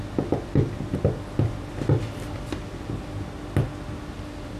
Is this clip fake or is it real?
real